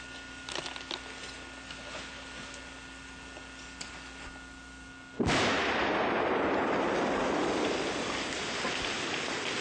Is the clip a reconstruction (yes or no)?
no